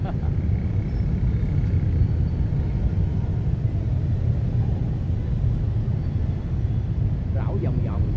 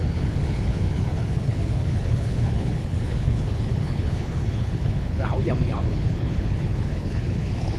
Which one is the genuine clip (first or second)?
first